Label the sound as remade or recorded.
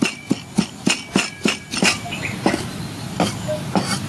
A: recorded